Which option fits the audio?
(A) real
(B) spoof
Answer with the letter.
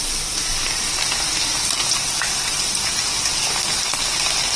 A